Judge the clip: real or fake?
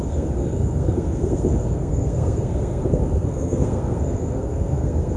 fake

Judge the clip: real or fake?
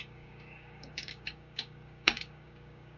fake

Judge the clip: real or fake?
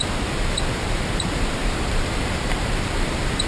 fake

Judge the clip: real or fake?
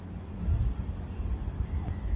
real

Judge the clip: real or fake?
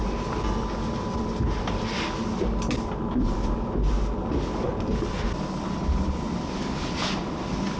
real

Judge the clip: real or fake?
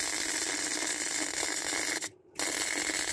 real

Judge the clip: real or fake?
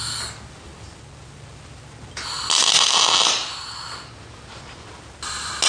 real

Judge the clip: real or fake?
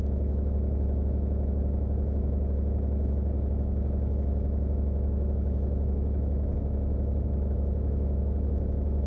fake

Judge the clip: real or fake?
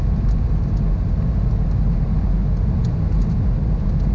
real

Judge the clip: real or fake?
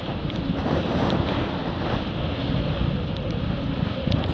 real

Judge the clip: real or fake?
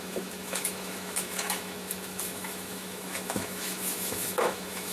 fake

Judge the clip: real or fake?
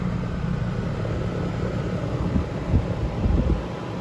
real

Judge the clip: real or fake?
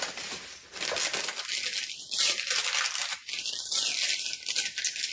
real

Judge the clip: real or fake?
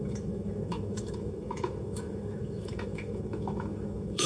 fake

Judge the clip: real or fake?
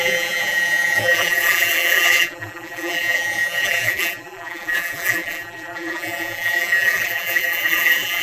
fake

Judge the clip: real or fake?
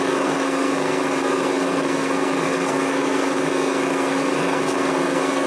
fake